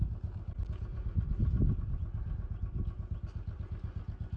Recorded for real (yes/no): yes